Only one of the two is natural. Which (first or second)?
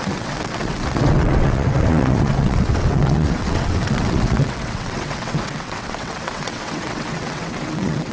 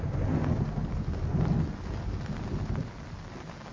second